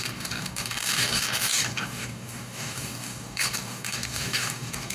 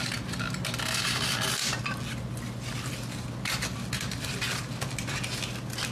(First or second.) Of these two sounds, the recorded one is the second